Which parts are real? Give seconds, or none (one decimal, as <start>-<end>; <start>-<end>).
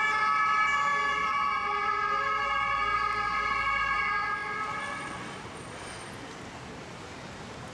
0.0-7.7